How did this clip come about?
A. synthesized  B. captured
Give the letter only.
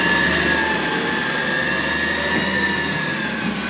B